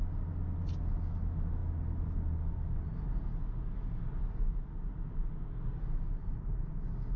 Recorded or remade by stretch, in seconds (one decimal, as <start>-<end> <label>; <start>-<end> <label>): 0.0-6.1 recorded; 6.1-6.7 remade; 6.7-7.2 recorded